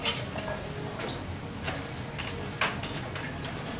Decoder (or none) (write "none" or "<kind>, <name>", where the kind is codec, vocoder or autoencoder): none